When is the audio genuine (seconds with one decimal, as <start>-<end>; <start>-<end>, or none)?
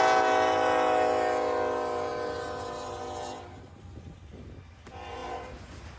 0.0-6.0